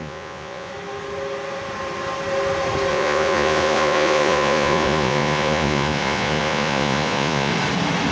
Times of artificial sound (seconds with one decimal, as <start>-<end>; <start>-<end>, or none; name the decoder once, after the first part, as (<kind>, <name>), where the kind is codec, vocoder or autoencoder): 0.0-0.7 (vocoder, Vocos); 2.9-7.5